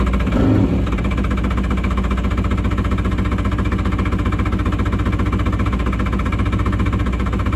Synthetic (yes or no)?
no